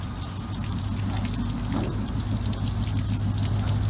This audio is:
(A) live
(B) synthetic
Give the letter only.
A